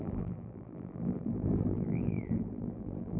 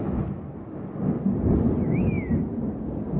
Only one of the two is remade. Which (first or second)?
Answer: first